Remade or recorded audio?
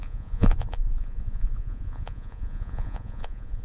remade